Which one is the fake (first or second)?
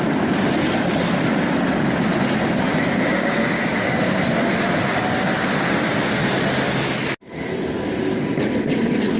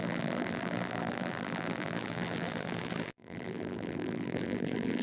second